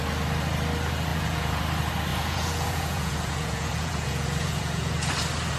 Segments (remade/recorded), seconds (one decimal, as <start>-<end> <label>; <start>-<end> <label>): 0.0-1.1 recorded; 1.1-1.6 remade; 1.6-2.1 recorded; 2.1-5.1 remade; 5.1-5.6 recorded